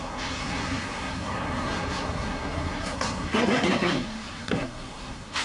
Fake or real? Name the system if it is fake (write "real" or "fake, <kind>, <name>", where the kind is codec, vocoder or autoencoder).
fake, codec, SNAC